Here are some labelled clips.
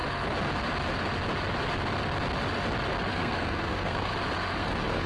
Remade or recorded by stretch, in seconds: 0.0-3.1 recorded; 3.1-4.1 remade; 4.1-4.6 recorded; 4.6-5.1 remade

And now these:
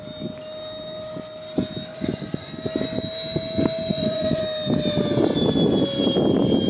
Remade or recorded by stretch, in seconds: 0.0-1.9 recorded; 1.9-2.5 remade; 2.5-3.9 recorded; 3.9-4.4 remade; 4.4-6.7 recorded